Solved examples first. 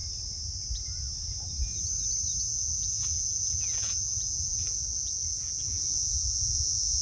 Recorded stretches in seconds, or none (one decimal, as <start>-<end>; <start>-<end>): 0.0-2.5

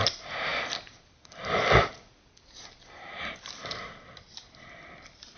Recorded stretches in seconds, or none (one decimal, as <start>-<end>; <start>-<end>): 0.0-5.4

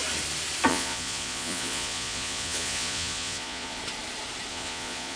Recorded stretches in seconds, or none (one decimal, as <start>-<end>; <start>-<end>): 0.0-0.7; 3.8-4.5